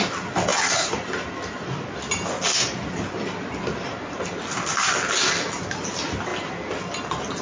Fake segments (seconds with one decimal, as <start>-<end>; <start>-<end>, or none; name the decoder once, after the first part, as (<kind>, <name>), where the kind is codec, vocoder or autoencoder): none